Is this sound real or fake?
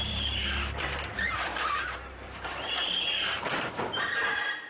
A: fake